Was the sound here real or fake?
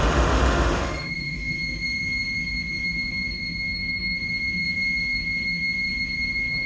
fake